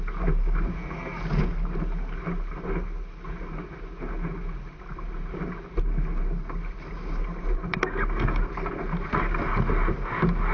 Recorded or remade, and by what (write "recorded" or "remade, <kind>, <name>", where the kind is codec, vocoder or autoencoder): recorded